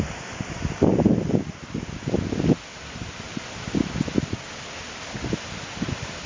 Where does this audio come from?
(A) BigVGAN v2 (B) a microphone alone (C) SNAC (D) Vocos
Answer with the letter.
B